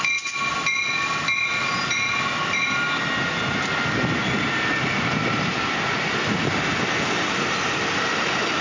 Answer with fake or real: real